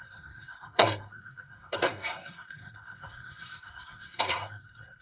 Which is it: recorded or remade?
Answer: remade